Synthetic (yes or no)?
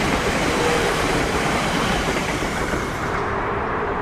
yes